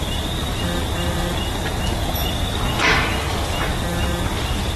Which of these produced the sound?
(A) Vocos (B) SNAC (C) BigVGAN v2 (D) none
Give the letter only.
D